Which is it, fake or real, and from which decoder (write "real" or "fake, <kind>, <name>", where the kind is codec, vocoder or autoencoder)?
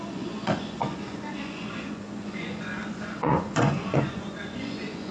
fake, vocoder, Vocos